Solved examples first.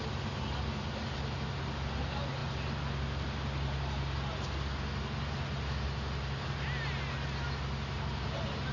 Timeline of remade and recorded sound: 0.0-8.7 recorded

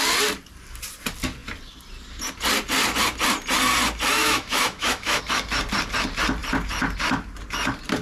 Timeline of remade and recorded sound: 0.0-4.2 recorded; 4.2-5.2 remade; 5.2-8.0 recorded

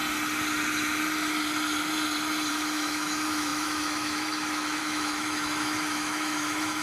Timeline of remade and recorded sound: 0.0-2.5 recorded; 2.5-6.8 remade

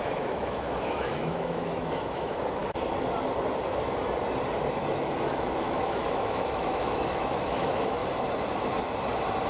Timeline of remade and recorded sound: 0.0-2.6 remade; 2.6-4.8 recorded; 4.8-8.0 remade; 8.0-9.5 recorded

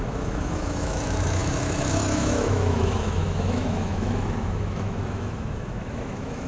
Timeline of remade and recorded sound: 0.0-6.5 remade

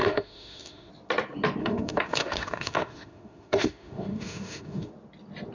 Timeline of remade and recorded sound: 0.0-0.9 remade; 0.9-1.6 recorded; 1.6-4.9 remade; 4.9-5.5 recorded

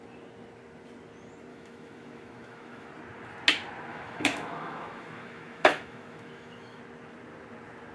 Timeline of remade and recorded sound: 0.0-1.5 recorded; 1.5-2.9 remade; 2.9-3.9 recorded; 3.9-6.8 remade; 6.8-7.9 recorded